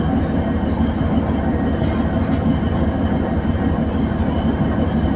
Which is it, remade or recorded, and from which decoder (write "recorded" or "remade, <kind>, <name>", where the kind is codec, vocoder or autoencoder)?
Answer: recorded